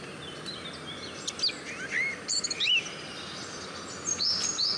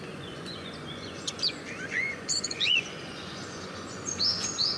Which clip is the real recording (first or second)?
first